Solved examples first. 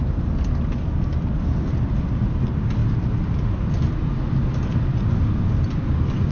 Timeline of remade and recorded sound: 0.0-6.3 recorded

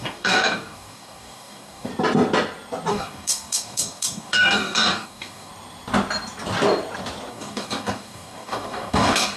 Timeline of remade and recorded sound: 0.0-1.9 remade; 1.9-2.9 recorded; 2.9-5.5 remade; 5.5-7.3 recorded; 7.3-9.4 remade

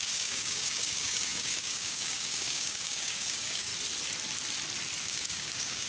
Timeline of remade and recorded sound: 0.0-3.7 remade; 3.7-5.0 recorded; 5.0-5.9 remade

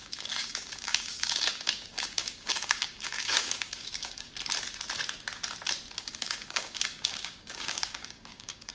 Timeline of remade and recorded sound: 0.0-4.3 remade; 4.3-6.0 recorded; 6.0-8.7 remade

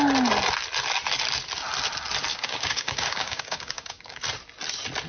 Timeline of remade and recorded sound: 0.0-2.3 recorded; 2.3-4.2 remade; 4.2-5.1 recorded

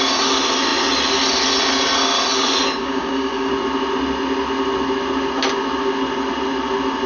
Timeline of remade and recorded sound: 0.0-2.8 recorded; 2.8-3.5 remade; 3.5-7.1 recorded

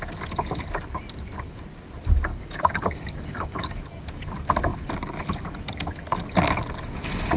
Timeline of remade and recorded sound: 0.0-2.3 recorded; 2.3-3.8 remade; 3.8-7.4 recorded